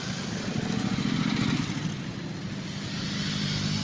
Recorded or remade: recorded